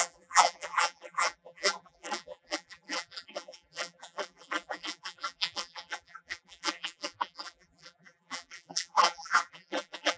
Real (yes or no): no